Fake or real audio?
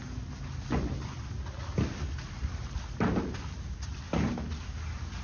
real